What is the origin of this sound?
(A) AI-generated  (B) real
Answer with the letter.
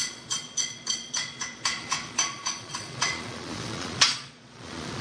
A